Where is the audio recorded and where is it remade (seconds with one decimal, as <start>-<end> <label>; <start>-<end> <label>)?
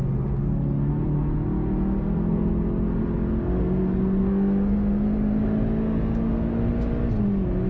0.0-3.6 recorded; 3.6-6.7 remade; 6.7-7.7 recorded